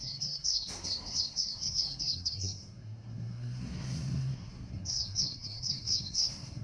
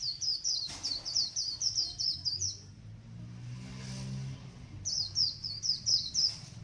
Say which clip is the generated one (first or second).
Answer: first